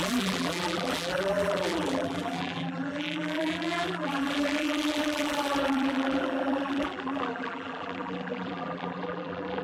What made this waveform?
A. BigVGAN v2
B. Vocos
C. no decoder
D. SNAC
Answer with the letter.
A